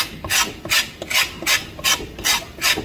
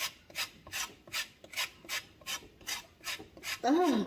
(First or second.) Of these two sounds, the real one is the first